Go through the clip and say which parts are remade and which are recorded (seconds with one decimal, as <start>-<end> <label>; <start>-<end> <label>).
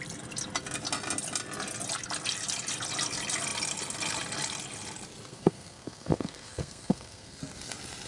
0.0-5.3 recorded; 5.3-7.4 remade; 7.4-8.1 recorded